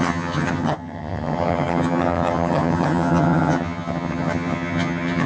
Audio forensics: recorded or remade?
remade